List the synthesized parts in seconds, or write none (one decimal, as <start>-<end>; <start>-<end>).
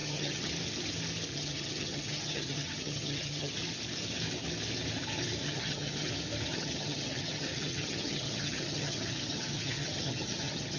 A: 0.0-0.5; 1.3-3.5; 5.4-6.1; 6.5-10.8